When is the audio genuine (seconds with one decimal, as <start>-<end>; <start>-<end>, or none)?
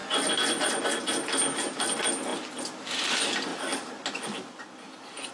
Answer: 0.8-5.3